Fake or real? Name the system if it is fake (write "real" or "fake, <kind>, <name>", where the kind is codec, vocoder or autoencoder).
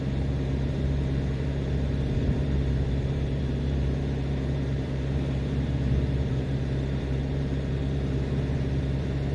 fake, vocoder, BigVGAN v2